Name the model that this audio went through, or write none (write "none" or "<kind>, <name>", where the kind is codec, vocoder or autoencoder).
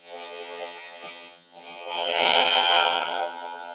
vocoder, HiFi-GAN